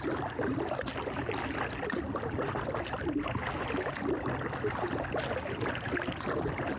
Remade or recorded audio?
recorded